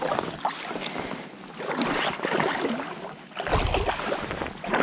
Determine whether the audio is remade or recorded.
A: recorded